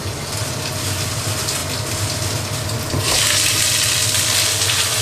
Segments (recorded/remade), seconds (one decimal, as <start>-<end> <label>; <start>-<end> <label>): 0.0-5.0 recorded